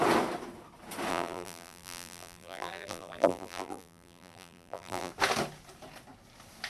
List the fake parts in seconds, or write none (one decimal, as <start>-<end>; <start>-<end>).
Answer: 1.1-5.1